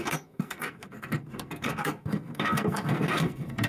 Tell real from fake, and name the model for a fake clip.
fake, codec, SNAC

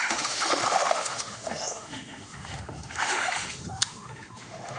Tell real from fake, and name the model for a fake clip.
fake, autoencoder, DAC-VAE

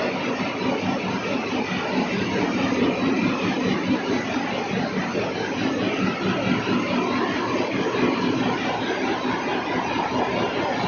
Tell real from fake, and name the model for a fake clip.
real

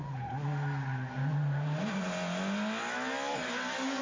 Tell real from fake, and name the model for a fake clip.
real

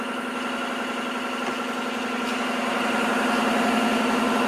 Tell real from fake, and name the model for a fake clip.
real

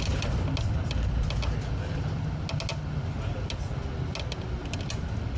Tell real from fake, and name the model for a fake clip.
real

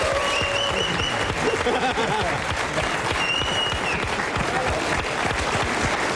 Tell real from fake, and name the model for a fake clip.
real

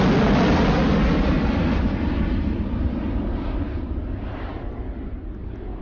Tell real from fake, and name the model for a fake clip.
real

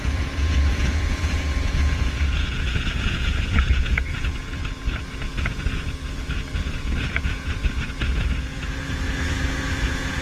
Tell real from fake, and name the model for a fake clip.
fake, vocoder, Vocos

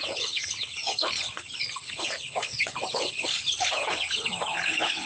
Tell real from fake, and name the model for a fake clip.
fake, codec, HILCodec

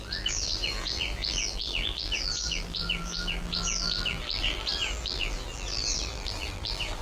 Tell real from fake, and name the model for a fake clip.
fake, vocoder, BigVGAN v2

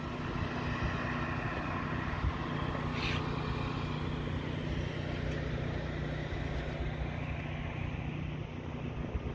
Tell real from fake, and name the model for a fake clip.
real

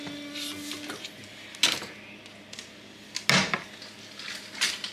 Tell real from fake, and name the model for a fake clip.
real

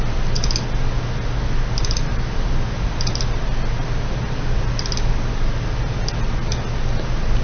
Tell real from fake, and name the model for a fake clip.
real